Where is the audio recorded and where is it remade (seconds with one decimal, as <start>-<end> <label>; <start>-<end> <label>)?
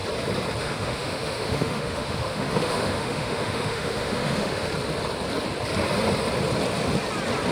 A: 0.0-0.6 recorded; 0.6-4.7 remade; 4.7-7.5 recorded